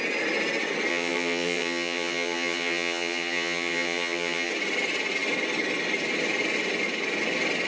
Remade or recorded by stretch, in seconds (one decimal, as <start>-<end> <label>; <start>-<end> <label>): 0.0-0.9 recorded; 0.9-4.5 remade; 4.5-7.7 recorded